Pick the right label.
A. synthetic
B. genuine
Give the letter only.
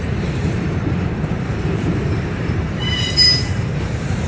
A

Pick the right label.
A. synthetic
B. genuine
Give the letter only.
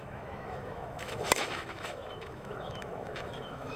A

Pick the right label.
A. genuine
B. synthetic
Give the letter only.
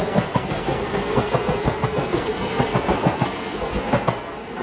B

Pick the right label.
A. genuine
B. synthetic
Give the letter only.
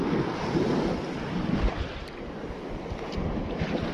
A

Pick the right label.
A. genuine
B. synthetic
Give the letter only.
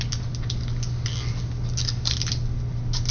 A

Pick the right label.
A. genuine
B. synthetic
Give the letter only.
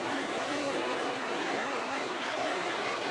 B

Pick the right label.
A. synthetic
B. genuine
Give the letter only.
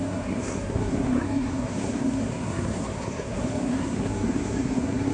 A